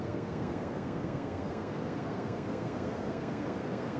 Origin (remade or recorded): remade